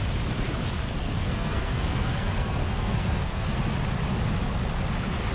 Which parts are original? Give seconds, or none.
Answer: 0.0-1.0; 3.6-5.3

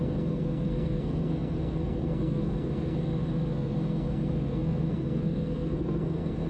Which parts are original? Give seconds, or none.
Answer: none

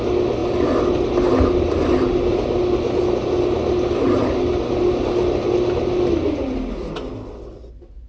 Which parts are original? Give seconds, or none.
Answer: 0.0-8.1

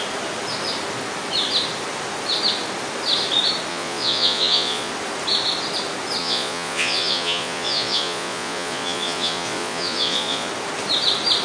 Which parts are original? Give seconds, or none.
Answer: 0.0-3.7; 4.9-6.2; 10.5-11.4

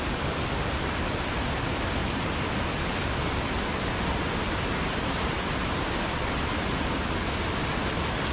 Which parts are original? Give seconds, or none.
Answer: 0.0-8.3

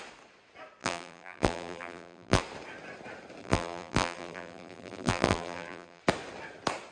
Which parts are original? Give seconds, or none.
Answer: 0.0-0.8; 2.4-3.4; 6.0-6.9

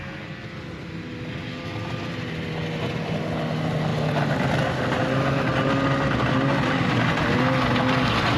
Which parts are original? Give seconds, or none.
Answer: 0.0-8.4